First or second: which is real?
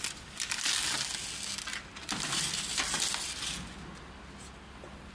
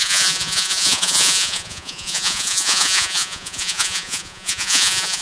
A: first